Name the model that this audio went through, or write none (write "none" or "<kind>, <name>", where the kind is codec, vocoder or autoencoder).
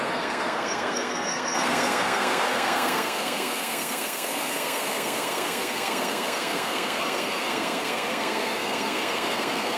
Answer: codec, SNAC